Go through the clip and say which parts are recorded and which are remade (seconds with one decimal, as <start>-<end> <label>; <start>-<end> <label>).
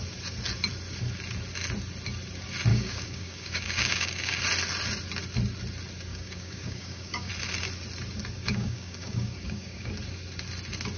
0.0-2.7 recorded; 2.7-4.4 remade; 4.4-6.1 recorded; 6.1-7.3 remade; 7.3-8.4 recorded; 8.4-9.9 remade; 9.9-11.0 recorded